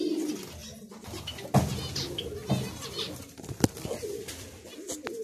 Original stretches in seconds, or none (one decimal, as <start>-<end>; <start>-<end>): 0.0-5.2